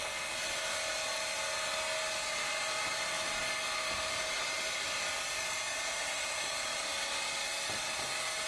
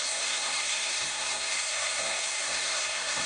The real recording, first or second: first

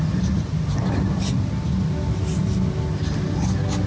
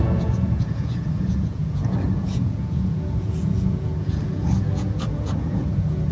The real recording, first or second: first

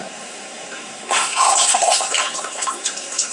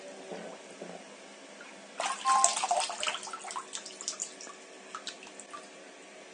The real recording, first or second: second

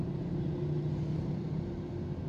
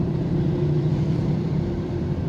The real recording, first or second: first